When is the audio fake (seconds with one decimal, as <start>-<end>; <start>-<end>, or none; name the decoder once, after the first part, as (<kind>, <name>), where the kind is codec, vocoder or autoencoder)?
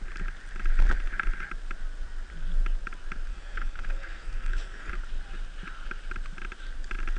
3.3-4.9 (codec, SNAC)